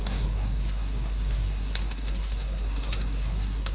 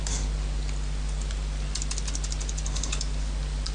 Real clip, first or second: second